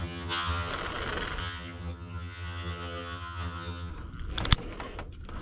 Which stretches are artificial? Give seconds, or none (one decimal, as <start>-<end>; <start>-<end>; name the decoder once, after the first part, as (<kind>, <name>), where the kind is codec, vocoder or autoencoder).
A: 0.0-0.7 (vocoder, HiFi-GAN); 1.4-3.9